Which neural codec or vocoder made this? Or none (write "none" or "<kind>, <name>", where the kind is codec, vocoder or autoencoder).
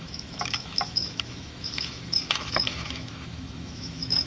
autoencoder, DAC-VAE